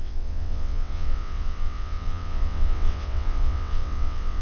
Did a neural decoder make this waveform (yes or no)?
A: yes